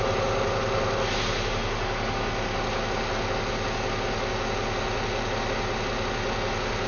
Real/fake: real